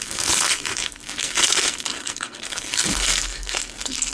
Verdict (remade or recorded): remade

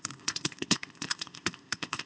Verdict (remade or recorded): remade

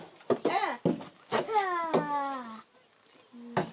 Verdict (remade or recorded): recorded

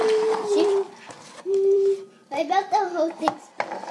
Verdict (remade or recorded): remade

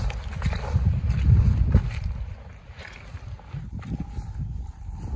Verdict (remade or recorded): recorded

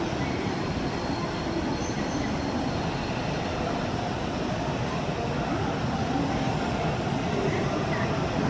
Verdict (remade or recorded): recorded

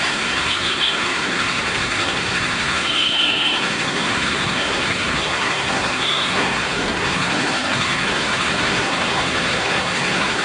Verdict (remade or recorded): remade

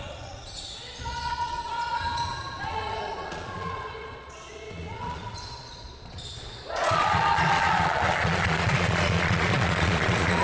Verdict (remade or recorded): remade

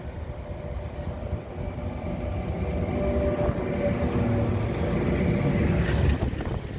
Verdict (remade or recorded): recorded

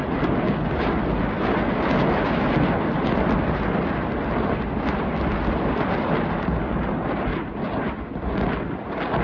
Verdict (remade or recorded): recorded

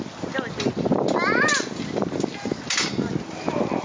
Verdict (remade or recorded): recorded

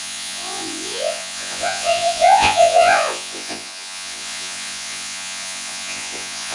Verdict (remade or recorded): remade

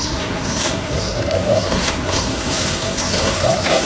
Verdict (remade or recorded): remade